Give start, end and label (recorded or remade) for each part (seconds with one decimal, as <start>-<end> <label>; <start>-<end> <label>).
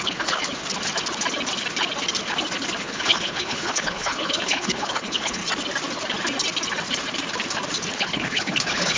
0.0-0.4 remade; 0.4-2.8 recorded; 2.8-5.4 remade; 5.4-7.9 recorded; 7.9-9.0 remade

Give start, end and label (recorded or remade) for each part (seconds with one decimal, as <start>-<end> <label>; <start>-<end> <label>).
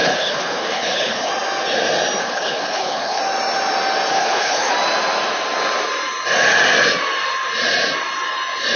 0.0-1.3 remade; 1.3-2.2 recorded; 2.2-3.2 remade; 3.2-4.1 recorded; 4.1-4.7 remade; 4.7-8.8 recorded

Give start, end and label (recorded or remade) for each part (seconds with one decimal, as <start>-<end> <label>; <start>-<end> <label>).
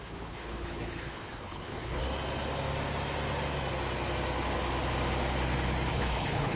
0.0-2.0 remade; 2.0-5.9 recorded; 5.9-6.6 remade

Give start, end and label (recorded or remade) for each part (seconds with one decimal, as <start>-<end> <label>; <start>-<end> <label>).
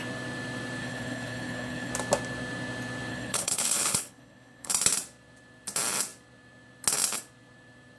0.0-0.8 recorded; 0.8-1.9 remade; 1.9-3.1 recorded; 3.1-4.7 remade; 4.7-8.0 recorded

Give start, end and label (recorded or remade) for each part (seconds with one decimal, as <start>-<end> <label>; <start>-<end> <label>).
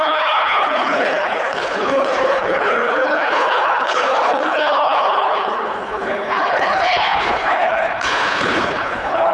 0.0-9.3 remade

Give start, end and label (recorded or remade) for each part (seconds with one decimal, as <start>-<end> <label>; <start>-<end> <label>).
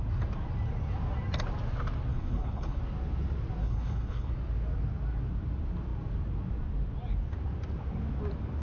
0.0-2.1 recorded; 2.1-2.8 remade; 2.8-3.6 recorded; 3.6-4.3 remade; 4.3-8.6 recorded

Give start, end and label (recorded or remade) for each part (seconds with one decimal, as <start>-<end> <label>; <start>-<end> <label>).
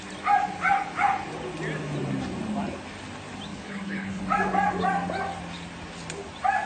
0.0-3.5 recorded; 3.5-4.2 remade; 4.2-6.7 recorded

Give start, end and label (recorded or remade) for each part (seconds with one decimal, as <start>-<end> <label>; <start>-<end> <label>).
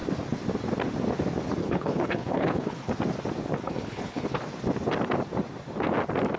0.0-1.6 recorded; 1.6-2.9 remade; 2.9-3.5 recorded; 3.5-4.4 remade; 4.4-6.4 recorded